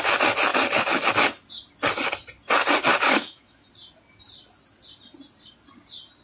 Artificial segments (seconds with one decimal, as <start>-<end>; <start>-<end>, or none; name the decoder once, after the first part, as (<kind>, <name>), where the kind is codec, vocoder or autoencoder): 2.9-3.7 (autoencoder, DAC-VAE)